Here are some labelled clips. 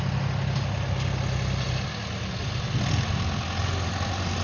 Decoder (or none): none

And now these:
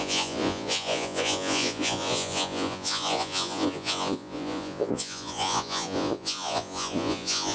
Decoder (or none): vocoder, Vocos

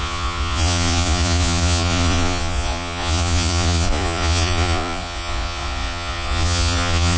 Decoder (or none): vocoder, Vocos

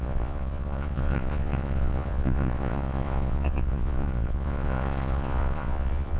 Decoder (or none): vocoder, Vocos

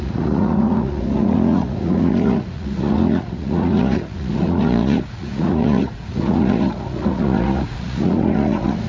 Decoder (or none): vocoder, Vocos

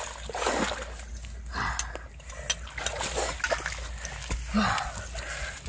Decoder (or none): none